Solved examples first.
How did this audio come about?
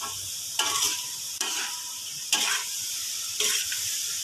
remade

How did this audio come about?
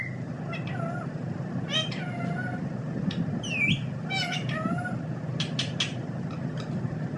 recorded